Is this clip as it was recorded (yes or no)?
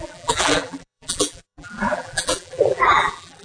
no